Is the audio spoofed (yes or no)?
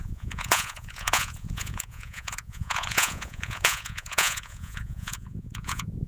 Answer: yes